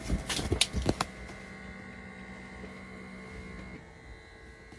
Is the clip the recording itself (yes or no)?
yes